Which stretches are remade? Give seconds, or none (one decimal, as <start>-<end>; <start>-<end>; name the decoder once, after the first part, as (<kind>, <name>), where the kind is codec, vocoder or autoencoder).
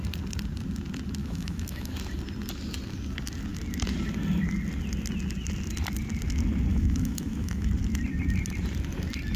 1.2-1.9 (autoencoder, DAC-VAE); 6.7-7.7